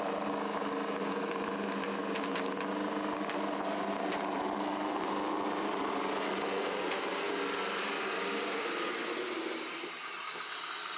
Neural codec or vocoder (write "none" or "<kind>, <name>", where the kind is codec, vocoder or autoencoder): none